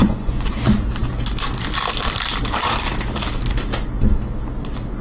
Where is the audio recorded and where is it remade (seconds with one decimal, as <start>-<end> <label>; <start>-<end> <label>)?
0.0-0.5 remade; 0.5-5.0 recorded